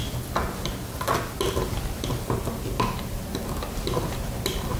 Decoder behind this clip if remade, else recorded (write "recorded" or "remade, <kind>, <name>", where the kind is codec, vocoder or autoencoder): recorded